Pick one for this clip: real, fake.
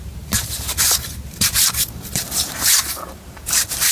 fake